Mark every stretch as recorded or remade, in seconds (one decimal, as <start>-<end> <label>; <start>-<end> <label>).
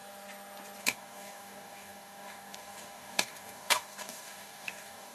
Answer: 0.0-0.8 recorded; 0.8-5.1 remade